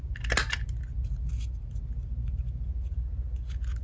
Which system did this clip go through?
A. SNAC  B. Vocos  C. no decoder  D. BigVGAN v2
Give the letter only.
C